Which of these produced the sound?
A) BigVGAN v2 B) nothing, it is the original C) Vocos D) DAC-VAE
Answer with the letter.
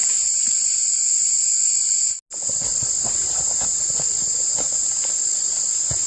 B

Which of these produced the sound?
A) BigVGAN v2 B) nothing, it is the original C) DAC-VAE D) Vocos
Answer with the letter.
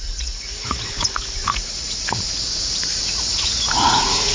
D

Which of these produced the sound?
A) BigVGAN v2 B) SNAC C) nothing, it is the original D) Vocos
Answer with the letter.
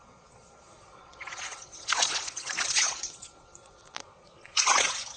D